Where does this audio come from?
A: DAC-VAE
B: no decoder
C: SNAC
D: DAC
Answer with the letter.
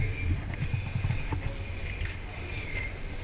B